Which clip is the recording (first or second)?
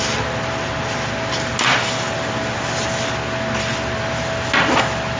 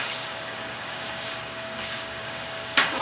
first